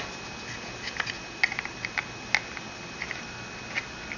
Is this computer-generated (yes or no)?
no